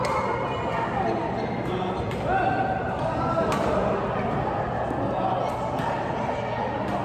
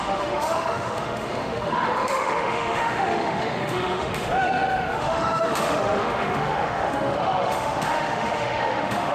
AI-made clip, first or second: second